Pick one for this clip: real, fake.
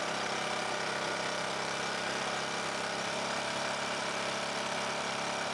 fake